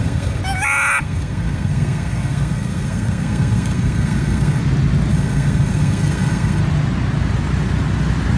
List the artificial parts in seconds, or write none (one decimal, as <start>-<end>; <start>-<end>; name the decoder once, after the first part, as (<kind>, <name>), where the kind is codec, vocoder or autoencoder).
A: 0.0-0.4 (codec, SNAC); 1.0-4.6; 5.1-6.6